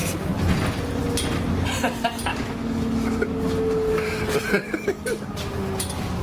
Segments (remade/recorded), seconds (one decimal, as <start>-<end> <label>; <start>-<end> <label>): 0.0-2.3 recorded; 2.3-4.1 remade; 4.1-4.6 recorded; 4.6-5.3 remade; 5.3-6.2 recorded